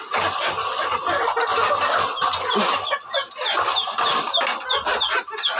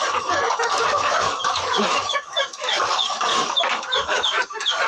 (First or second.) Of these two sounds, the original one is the first